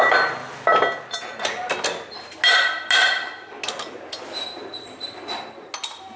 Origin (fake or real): real